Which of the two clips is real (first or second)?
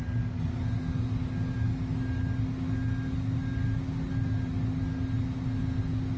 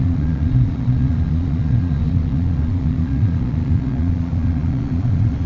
first